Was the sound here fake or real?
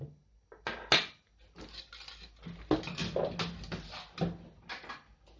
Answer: real